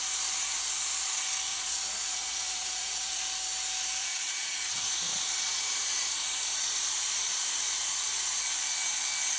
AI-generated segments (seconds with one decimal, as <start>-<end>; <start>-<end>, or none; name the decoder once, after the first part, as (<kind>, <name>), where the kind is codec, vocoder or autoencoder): 1.5-3.1 (vocoder, Vocos); 4.0-8.4